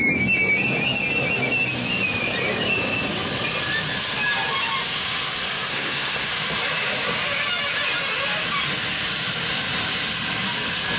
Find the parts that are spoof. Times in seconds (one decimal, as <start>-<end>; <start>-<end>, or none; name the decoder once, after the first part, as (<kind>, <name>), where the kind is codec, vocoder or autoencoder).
5.7-6.3 (codec, SNAC)